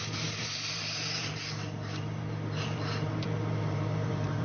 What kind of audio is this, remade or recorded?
remade